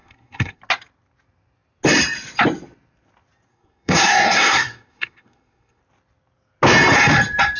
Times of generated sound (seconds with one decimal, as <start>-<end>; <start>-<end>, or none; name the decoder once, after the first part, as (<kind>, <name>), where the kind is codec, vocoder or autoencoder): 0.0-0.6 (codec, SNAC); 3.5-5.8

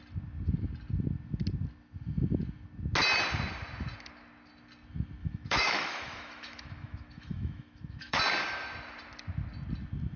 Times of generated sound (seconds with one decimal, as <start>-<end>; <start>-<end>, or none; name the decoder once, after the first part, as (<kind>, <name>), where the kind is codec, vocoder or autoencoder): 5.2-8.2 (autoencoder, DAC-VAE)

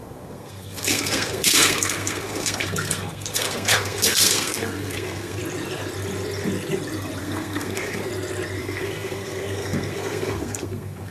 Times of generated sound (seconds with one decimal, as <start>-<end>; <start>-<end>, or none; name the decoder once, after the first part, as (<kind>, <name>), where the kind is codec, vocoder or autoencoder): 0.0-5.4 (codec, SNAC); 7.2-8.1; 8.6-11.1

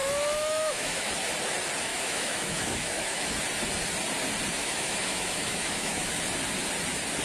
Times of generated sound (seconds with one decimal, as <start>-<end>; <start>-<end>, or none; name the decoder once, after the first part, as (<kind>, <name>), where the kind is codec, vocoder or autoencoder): 0.0-1.1 (autoencoder, DAC-VAE); 1.9-3.3; 4.6-6.1